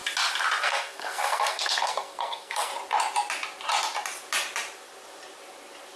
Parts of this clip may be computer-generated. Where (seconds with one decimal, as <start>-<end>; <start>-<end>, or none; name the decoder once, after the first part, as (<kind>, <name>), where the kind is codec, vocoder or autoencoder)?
0.6-2.7 (codec, SNAC)